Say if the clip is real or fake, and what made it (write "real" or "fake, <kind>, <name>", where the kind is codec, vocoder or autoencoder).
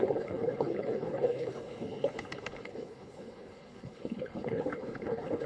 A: fake, codec, HILCodec